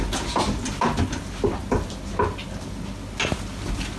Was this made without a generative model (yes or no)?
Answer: yes